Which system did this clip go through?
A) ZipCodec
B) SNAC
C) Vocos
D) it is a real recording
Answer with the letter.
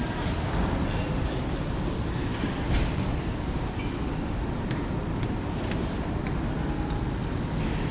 D